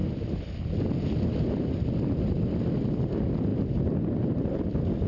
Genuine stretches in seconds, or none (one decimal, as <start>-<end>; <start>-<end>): 0.0-5.1